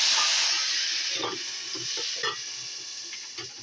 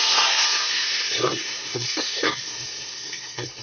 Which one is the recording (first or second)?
first